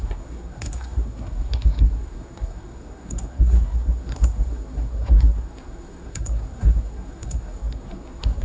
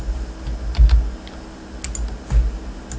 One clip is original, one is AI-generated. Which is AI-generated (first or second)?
first